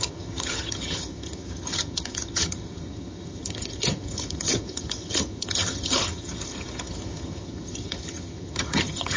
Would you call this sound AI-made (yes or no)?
yes